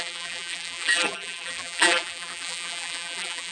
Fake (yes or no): yes